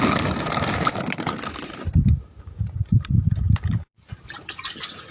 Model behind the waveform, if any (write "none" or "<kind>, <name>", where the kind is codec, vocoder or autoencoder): vocoder, BigVGAN v2